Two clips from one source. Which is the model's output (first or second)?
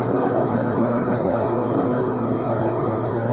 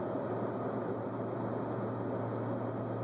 first